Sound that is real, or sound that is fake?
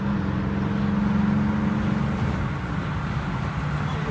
real